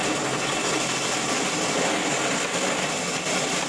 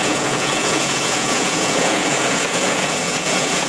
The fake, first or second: second